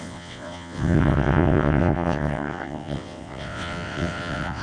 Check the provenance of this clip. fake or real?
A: fake